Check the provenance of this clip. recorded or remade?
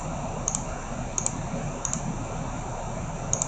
recorded